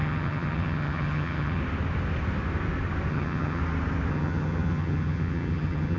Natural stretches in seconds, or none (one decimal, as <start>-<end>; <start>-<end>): 1.6-3.1; 3.6-4.1